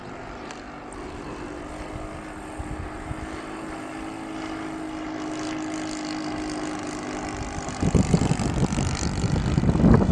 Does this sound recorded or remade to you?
recorded